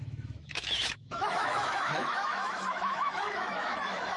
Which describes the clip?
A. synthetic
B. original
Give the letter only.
A